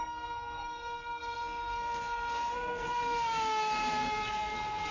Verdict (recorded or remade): remade